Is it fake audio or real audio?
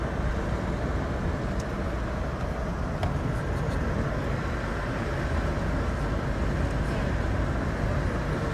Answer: real